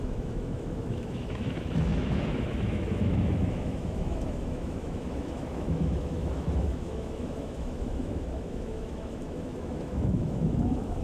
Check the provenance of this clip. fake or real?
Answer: fake